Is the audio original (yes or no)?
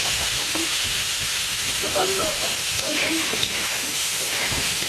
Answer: no